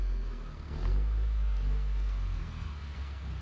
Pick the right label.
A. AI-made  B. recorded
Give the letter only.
A